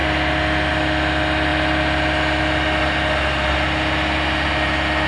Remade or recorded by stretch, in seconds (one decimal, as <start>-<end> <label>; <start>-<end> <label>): 0.0-5.1 recorded